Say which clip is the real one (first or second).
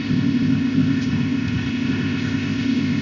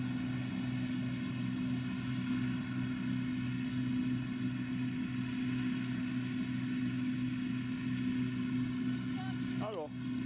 second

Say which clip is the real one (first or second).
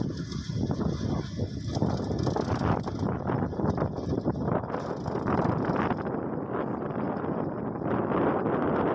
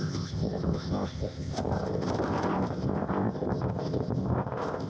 first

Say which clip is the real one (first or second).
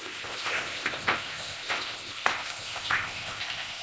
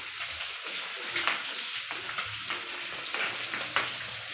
second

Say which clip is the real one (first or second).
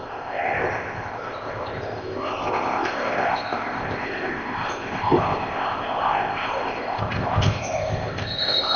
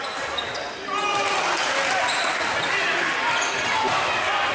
second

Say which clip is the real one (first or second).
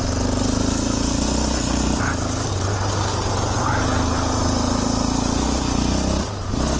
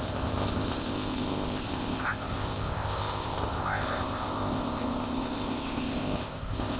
first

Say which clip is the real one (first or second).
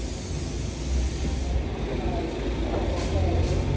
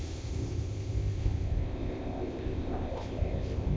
first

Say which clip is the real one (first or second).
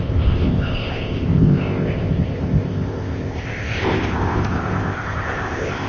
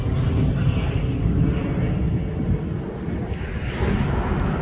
second